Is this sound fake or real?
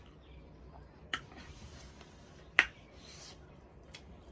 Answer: fake